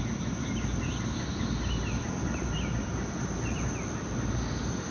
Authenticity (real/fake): real